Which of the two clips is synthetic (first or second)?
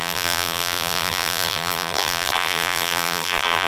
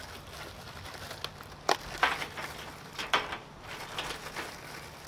first